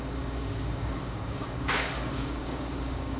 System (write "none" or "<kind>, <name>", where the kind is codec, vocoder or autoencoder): codec, DAC